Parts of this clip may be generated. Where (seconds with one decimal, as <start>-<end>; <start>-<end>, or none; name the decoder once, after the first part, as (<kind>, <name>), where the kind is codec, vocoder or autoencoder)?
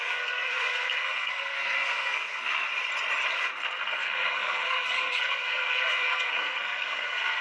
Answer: 0.0-2.7 (codec, SNAC); 3.3-7.4